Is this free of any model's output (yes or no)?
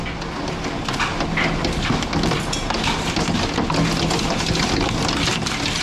yes